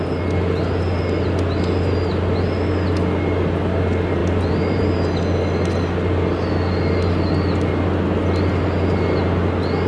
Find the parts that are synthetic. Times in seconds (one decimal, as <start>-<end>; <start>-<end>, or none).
4.2-4.8